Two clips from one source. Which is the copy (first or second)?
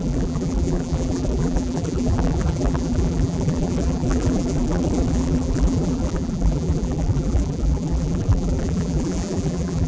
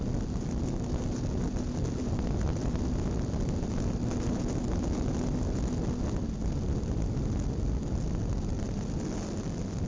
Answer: first